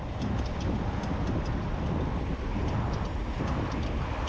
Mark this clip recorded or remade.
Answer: recorded